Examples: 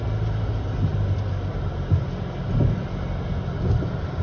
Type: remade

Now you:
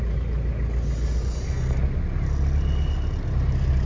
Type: recorded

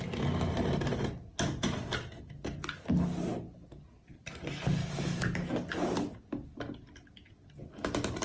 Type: recorded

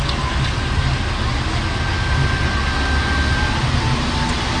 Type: recorded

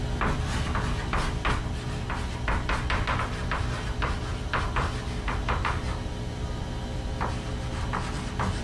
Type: recorded